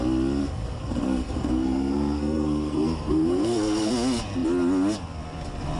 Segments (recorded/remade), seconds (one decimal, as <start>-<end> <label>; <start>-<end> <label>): 0.0-0.4 recorded; 0.4-3.9 remade; 3.9-5.8 recorded